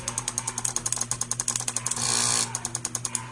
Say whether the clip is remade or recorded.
recorded